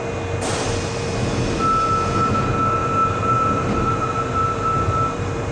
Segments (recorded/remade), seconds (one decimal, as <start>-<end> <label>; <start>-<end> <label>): 0.0-2.8 recorded; 2.8-5.5 remade